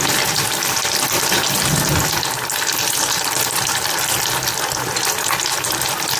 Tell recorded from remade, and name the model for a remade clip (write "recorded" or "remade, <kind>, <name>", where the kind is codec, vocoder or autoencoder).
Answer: recorded